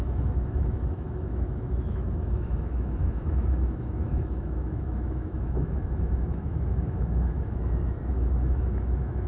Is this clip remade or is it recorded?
remade